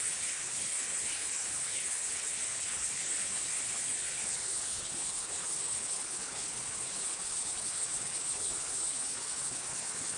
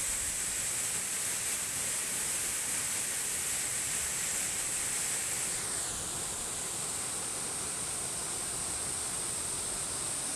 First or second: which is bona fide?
second